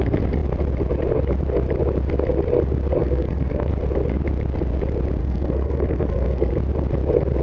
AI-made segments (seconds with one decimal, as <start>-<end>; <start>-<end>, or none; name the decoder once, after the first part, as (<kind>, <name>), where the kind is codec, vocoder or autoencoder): 3.0-3.7 (codec, SNAC); 5.2-6.5